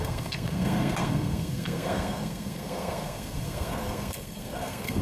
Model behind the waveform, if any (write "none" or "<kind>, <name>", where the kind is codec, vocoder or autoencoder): codec, SNAC